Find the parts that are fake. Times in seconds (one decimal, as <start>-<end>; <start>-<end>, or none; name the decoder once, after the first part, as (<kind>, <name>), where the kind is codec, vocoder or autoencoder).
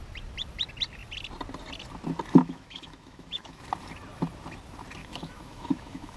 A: 2.4-3.6 (autoencoder, DAC-VAE); 5.0-6.2